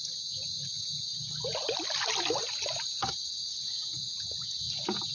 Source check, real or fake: real